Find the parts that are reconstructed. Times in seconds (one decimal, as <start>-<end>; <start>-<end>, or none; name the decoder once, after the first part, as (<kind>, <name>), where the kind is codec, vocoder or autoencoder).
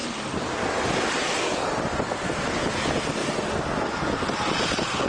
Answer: none